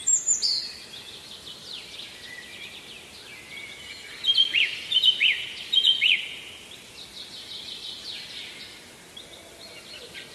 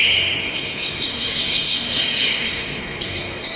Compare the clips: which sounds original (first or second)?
first